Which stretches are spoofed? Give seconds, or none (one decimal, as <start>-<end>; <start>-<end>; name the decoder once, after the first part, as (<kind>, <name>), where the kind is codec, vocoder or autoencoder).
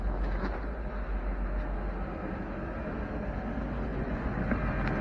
3.9-4.5 (vocoder, Vocos)